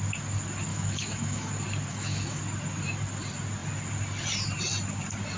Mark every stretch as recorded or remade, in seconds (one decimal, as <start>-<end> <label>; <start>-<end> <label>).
0.0-0.7 recorded; 0.7-1.5 remade; 1.5-1.9 recorded; 1.9-2.4 remade; 2.4-5.4 recorded